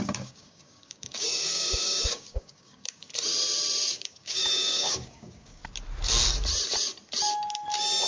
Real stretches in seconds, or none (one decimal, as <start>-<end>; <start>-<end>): 3.1-3.9; 5.6-8.1